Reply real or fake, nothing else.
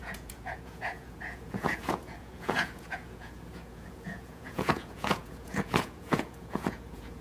fake